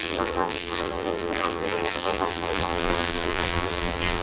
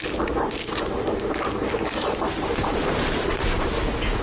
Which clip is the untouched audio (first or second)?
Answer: second